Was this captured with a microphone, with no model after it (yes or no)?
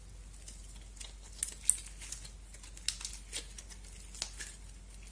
yes